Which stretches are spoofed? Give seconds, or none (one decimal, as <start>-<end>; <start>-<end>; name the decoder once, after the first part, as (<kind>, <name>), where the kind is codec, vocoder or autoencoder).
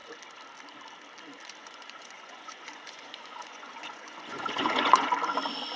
1.6-5.1 (vocoder, Vocos)